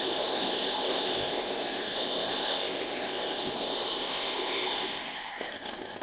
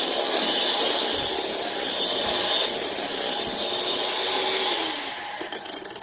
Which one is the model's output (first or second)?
first